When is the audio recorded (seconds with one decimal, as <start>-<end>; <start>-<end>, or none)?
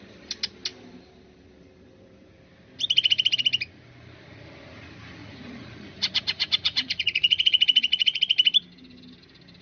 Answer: 0.0-5.2; 8.2-9.6